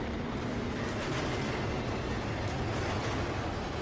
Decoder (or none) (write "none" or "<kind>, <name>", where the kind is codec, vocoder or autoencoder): none